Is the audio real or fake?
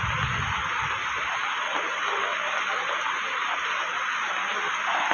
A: real